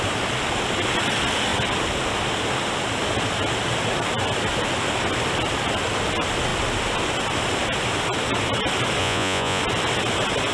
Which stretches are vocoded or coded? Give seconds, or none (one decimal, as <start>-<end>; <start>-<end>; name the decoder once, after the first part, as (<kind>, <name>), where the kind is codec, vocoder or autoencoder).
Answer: 9.0-9.6 (vocoder, Vocos)